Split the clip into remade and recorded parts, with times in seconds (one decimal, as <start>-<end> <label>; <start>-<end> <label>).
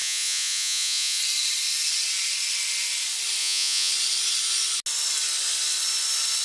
0.0-1.2 remade; 1.2-3.4 recorded; 3.4-3.9 remade; 3.9-6.4 recorded